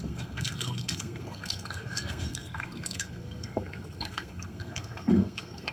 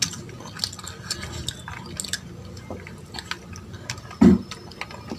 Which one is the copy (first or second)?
first